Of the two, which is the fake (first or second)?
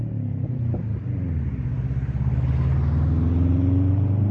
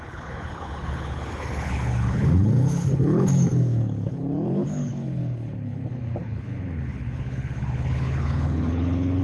second